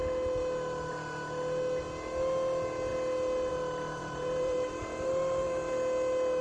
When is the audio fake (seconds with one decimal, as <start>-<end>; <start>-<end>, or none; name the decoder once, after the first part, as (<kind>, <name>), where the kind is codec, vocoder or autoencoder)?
4.0-5.7 (vocoder, BigVGAN v2)